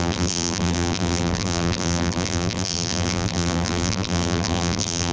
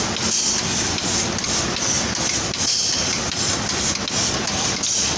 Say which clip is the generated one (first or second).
first